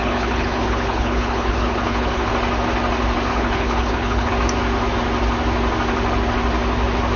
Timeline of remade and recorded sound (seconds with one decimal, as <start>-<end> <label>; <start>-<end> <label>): 0.0-2.3 remade; 2.3-3.3 recorded; 3.3-4.3 remade; 4.3-7.2 recorded